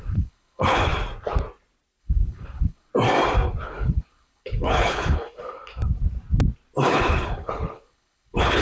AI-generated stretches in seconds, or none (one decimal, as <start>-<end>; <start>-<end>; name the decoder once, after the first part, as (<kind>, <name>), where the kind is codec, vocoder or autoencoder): 0.0-0.9 (codec, HILCodec); 2.0-2.9; 3.6-5.7; 6.9-8.6